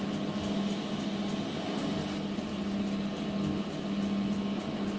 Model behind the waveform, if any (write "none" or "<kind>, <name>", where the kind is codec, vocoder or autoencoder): none